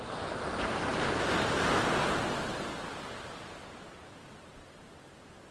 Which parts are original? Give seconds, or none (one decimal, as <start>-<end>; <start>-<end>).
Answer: 0.0-5.5